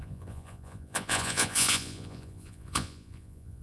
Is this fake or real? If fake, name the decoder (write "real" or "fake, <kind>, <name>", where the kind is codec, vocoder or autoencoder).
fake, vocoder, Vocos